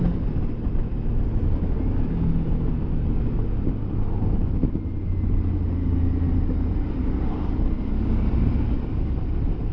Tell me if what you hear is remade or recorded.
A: recorded